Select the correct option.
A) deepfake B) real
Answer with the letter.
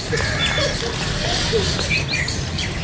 B